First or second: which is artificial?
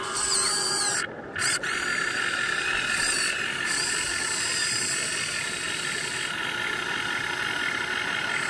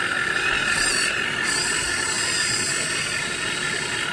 first